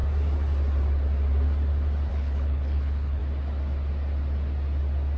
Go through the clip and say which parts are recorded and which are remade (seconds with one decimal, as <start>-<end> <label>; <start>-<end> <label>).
0.0-2.1 recorded; 2.1-3.2 remade; 3.2-5.2 recorded